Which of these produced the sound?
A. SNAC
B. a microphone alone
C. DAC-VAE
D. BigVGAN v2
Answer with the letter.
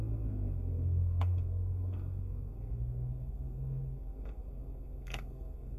A